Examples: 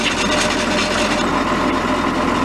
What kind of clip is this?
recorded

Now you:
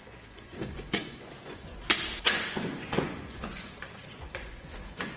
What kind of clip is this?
remade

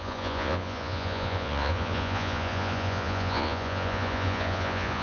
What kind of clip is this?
remade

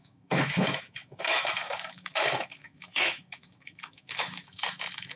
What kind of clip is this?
remade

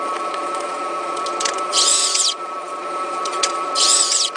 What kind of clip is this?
remade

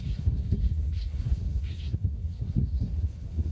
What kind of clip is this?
remade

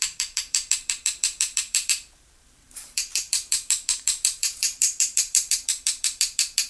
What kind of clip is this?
remade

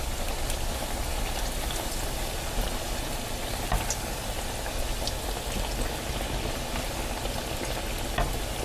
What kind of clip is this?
recorded